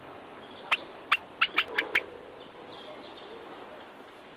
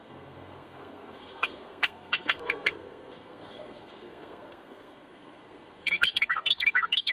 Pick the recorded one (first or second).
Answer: first